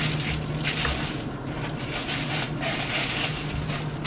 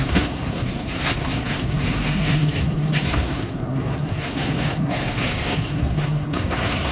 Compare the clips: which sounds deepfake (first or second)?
second